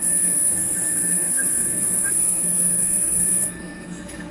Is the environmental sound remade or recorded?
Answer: remade